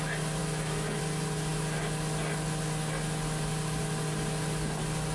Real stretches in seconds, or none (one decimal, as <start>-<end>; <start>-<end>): 0.0-0.4; 1.0-5.1